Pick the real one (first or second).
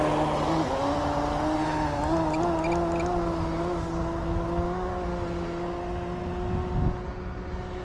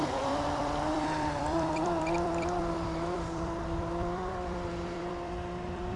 first